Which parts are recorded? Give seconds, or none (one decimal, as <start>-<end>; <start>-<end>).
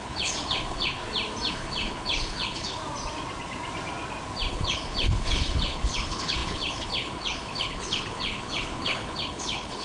1.0-1.5; 2.8-4.5